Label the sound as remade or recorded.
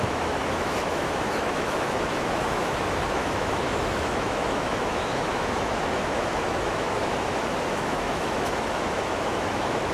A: remade